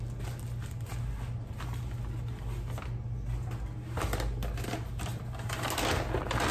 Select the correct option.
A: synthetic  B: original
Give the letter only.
B